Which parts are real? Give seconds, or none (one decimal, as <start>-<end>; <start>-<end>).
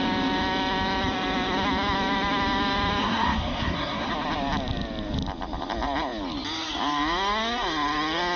0.0-3.0; 4.1-8.4